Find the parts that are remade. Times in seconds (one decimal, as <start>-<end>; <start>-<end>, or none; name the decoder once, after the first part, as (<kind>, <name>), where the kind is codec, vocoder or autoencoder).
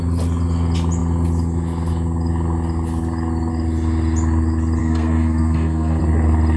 4.8-6.0 (codec, SNAC)